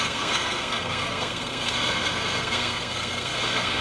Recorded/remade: remade